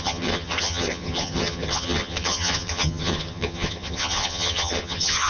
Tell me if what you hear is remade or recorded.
remade